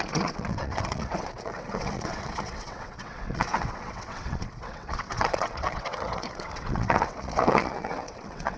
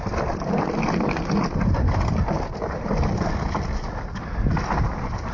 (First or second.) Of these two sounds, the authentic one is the second